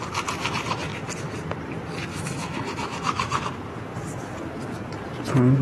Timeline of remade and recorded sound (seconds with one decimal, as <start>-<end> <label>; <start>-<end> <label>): 0.0-2.1 recorded; 2.1-3.4 remade; 3.4-5.6 recorded